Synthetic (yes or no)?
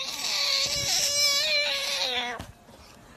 no